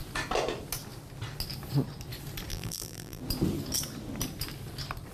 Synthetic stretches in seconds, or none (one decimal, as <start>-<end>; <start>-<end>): 2.5-3.2